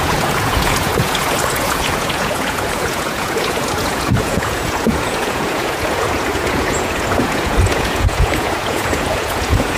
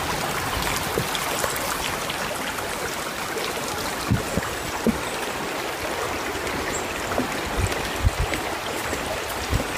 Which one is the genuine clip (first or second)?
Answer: second